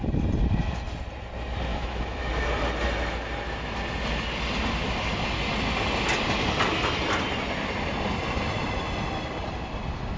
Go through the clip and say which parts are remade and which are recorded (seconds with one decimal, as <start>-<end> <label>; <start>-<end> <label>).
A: 0.0-1.7 recorded; 1.7-2.3 remade; 2.3-10.2 recorded